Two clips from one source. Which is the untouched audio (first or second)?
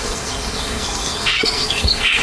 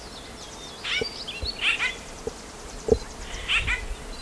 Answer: second